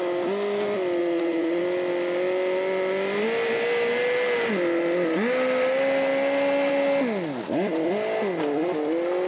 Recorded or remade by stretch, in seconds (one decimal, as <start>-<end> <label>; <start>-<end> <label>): 0.0-1.0 recorded; 1.0-1.6 remade; 1.6-9.3 recorded